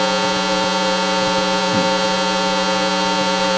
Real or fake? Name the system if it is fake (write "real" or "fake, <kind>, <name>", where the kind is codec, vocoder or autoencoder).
fake, vocoder, Vocos